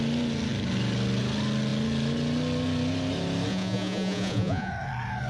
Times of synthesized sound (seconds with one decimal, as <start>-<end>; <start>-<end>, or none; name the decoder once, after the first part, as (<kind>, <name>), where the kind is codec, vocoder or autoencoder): 3.5-4.7 (vocoder, Vocos)